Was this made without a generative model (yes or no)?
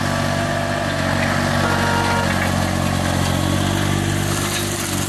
yes